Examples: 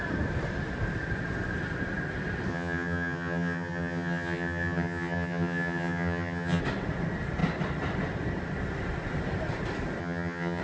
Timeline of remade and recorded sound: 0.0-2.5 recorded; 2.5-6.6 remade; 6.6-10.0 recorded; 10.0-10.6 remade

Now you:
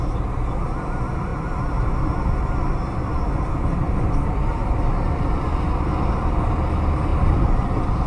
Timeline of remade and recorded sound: 0.0-8.1 recorded